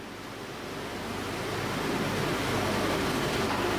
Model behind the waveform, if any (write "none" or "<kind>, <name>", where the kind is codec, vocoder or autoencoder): none